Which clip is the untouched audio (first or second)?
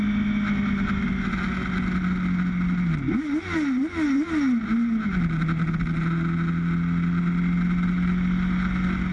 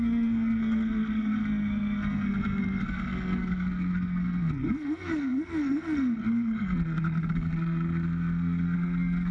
first